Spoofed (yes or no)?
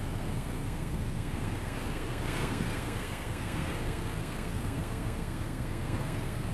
yes